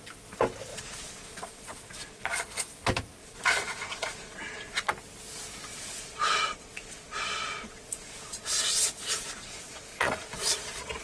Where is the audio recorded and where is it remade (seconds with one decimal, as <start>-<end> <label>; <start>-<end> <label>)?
0.0-0.7 recorded; 0.7-2.3 remade; 2.3-3.2 recorded; 3.2-4.9 remade; 4.9-5.7 recorded; 5.7-11.0 remade